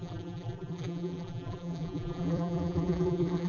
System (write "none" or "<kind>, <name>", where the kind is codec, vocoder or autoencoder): vocoder, BigVGAN v2